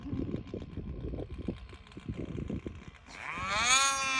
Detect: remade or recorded recorded